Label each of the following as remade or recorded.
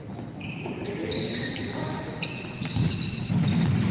recorded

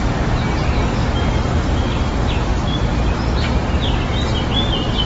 recorded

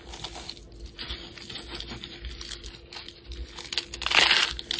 recorded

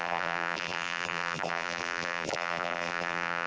remade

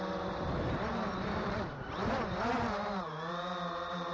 remade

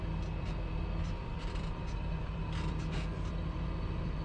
remade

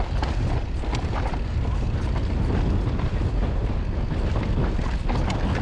recorded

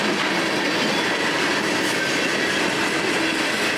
recorded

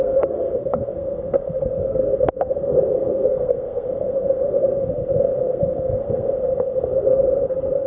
remade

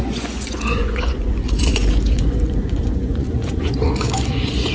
remade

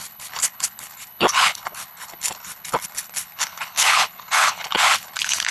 remade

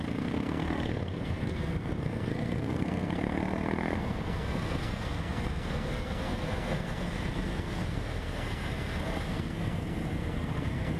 remade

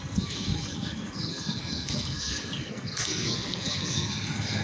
remade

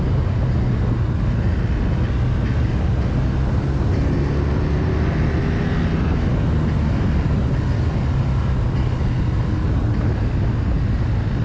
recorded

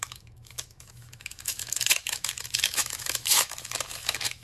remade